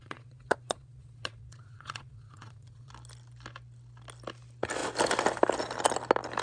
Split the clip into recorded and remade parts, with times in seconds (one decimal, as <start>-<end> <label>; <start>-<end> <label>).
0.0-2.9 remade; 2.9-6.4 recorded

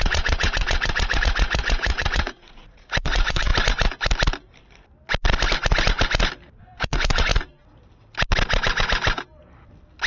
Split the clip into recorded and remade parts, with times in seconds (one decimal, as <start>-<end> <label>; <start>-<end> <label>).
0.0-3.5 remade; 3.5-6.6 recorded; 6.6-7.3 remade; 7.3-10.1 recorded

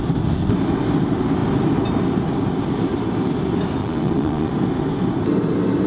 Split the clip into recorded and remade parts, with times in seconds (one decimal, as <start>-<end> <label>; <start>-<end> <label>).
0.0-3.8 recorded; 3.8-4.5 remade; 4.5-5.9 recorded

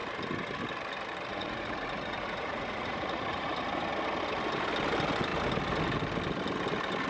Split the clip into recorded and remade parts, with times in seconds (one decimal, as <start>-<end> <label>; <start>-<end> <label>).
0.0-1.3 recorded; 1.3-3.5 remade; 3.5-7.1 recorded

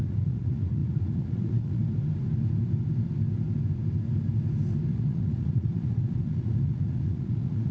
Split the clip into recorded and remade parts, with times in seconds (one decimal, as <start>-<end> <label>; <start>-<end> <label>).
0.0-1.8 remade; 1.8-4.9 recorded; 4.9-7.7 remade

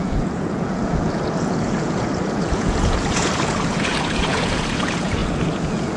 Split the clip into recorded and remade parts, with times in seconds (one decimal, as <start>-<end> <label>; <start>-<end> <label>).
0.0-6.0 remade